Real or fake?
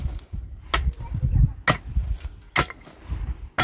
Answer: real